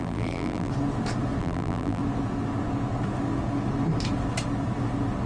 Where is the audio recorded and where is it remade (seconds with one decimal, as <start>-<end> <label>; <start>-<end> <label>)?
0.0-0.7 remade; 0.7-1.4 recorded; 1.4-2.0 remade; 2.0-5.3 recorded